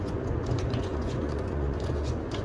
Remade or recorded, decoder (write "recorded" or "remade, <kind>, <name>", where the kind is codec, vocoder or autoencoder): remade, vocoder, Vocos